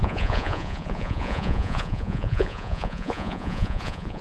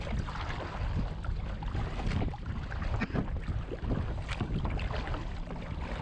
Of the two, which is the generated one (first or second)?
first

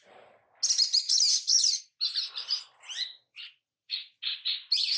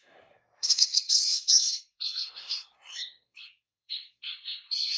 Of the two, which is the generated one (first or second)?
second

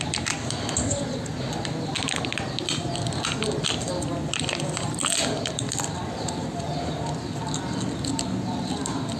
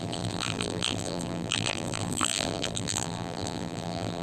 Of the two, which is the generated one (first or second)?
second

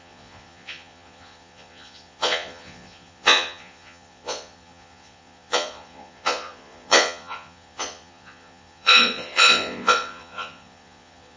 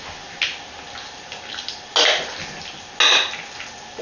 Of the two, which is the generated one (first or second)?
first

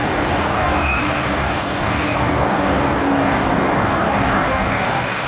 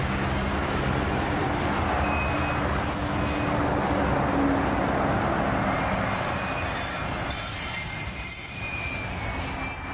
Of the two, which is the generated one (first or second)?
first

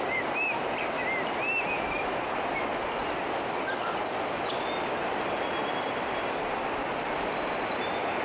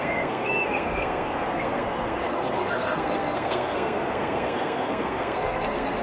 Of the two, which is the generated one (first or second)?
second